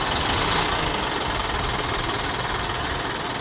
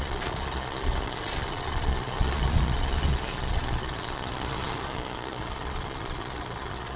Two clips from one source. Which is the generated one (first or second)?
second